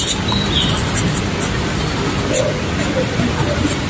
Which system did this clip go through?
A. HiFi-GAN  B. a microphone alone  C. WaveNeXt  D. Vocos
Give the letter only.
B